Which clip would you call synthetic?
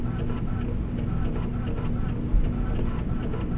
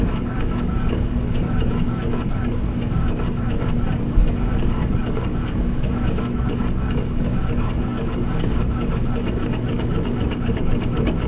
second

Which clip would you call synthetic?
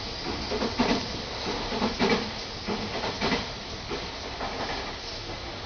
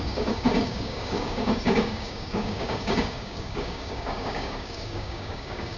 second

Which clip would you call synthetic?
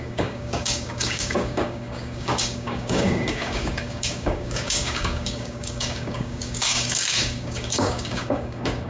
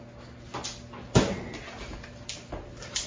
first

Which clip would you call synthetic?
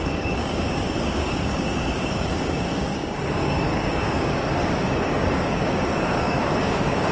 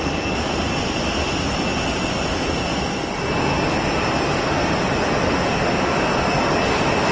first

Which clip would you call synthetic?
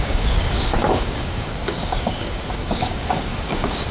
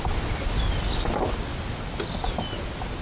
first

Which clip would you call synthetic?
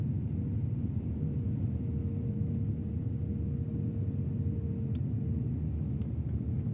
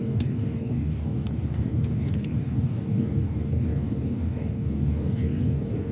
second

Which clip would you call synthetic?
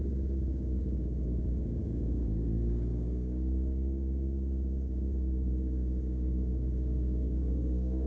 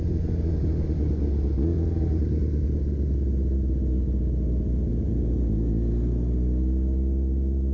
first